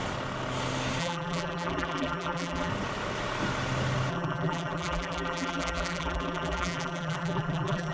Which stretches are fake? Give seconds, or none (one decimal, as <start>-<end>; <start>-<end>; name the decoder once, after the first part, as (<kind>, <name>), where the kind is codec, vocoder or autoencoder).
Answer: 1.0-2.7 (vocoder, BigVGAN v2); 4.1-7.9